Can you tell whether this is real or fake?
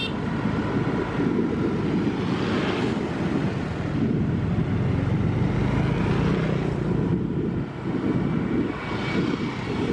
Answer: real